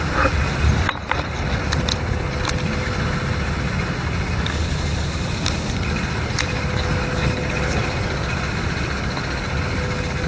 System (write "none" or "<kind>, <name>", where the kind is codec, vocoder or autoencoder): none